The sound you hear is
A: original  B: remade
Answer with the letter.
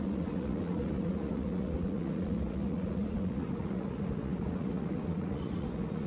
B